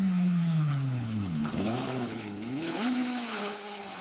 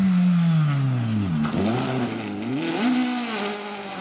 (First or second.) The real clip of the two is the second